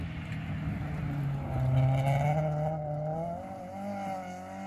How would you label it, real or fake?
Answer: real